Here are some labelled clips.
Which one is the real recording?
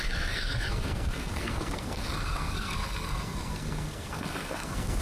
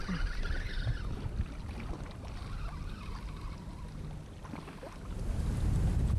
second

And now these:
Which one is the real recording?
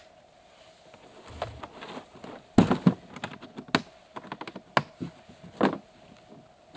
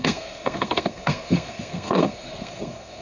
first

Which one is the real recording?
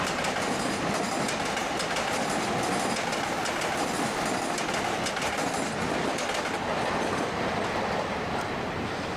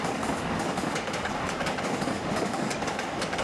first